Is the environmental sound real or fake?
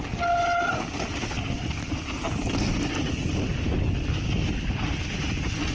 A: real